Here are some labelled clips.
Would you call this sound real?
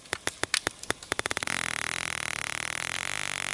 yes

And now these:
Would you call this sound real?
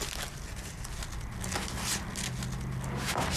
yes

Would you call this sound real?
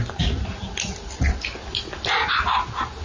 yes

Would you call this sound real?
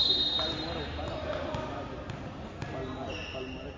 yes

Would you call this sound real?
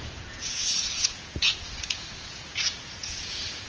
no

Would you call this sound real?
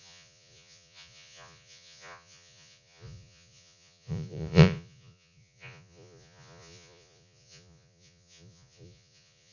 no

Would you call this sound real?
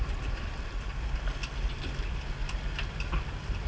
yes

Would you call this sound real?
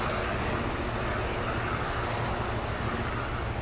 yes